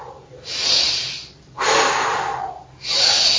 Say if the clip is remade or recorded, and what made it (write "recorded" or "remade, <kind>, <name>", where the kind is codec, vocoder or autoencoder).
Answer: recorded